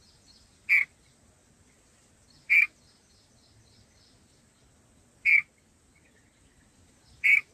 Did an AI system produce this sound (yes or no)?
no